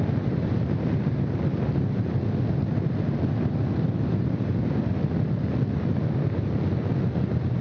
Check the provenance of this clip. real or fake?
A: real